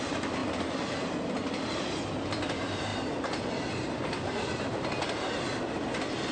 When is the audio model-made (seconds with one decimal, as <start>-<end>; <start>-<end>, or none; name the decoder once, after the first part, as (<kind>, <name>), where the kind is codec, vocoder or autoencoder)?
none